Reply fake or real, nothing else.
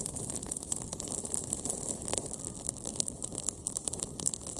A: fake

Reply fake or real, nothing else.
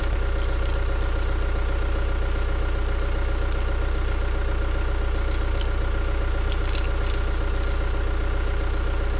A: real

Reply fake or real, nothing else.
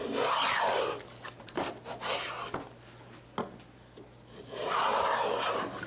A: real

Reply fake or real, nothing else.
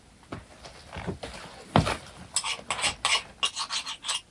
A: real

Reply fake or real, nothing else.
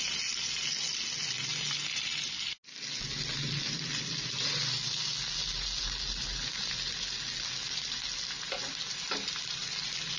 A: real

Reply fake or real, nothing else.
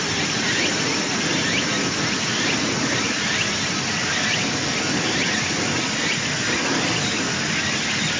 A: real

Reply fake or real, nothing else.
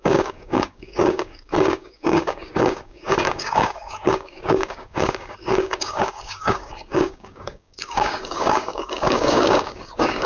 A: fake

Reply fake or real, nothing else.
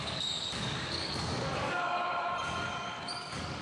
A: fake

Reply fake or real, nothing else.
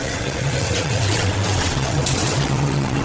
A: fake